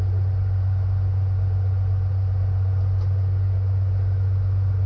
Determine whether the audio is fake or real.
real